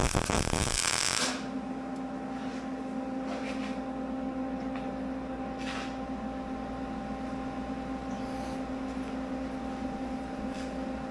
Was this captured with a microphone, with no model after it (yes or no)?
yes